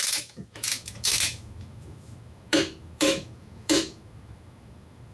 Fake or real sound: fake